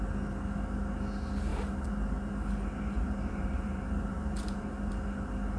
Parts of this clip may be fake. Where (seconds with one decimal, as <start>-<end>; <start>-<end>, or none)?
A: 1.5-4.9